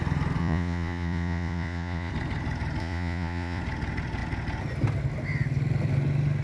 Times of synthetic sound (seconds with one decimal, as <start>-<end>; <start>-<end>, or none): 0.4-2.1; 2.8-3.6